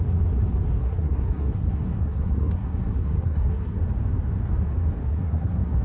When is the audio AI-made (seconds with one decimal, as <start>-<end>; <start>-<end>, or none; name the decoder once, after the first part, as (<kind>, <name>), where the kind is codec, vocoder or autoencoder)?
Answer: 0.8-3.8 (codec, SNAC); 5.0-5.8